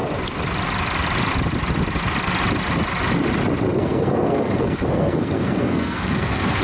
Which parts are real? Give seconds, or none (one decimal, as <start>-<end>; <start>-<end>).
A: 0.0-3.7